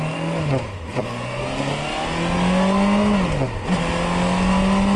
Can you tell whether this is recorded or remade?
recorded